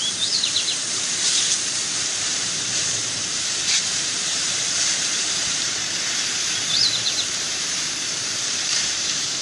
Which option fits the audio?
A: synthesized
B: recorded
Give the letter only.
A